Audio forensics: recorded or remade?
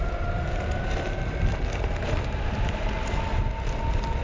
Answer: recorded